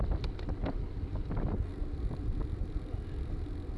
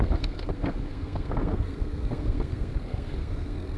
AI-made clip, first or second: second